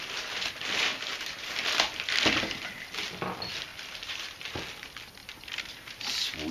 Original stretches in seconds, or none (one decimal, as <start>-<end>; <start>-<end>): 0.0-0.9; 1.5-3.7; 4.5-5.2; 6.0-6.5